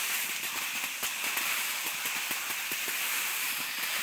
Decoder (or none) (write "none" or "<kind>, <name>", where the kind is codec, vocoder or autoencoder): vocoder, BigVGAN v2